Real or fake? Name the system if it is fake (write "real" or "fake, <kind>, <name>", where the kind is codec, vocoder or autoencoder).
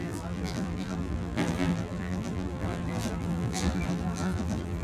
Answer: fake, vocoder, BigVGAN v2